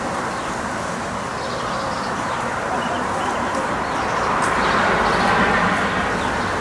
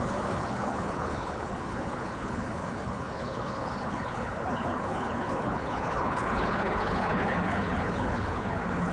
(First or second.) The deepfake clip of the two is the second